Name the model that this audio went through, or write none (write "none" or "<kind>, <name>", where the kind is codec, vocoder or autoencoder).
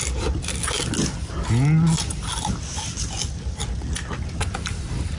none